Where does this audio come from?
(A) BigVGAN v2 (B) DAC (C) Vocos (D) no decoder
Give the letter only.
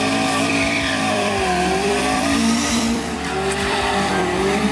A